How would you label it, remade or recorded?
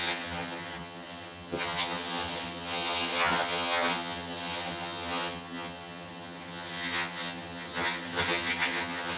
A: remade